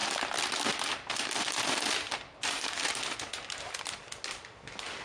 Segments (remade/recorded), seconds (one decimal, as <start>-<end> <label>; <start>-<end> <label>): 0.0-5.0 recorded